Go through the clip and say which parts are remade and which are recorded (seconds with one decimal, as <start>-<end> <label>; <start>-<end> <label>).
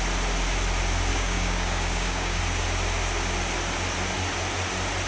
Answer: 0.0-1.1 recorded; 1.1-2.4 remade; 2.4-5.1 recorded